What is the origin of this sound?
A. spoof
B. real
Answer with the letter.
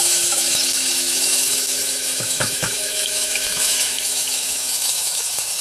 A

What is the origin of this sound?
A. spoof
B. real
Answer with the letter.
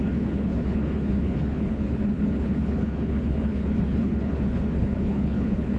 A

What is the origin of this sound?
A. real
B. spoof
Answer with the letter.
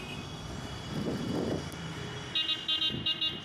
A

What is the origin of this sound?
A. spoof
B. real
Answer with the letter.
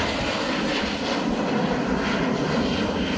B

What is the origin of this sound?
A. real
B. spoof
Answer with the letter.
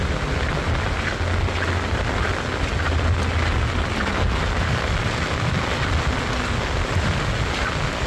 A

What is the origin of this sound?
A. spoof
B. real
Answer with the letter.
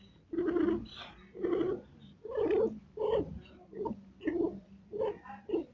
B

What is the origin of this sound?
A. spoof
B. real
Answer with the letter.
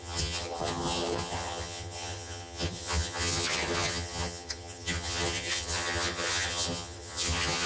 A